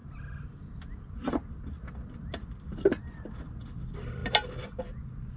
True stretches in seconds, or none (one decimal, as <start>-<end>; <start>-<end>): 0.0-5.4